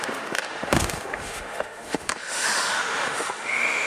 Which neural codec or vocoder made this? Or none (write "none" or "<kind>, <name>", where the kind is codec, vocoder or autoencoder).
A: autoencoder, DAC-VAE